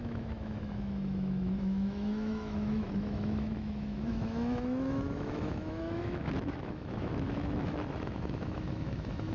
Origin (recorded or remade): remade